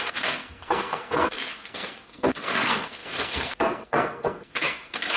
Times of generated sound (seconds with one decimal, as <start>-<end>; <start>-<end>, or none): 0.0-5.2